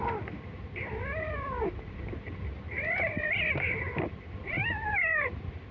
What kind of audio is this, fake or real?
fake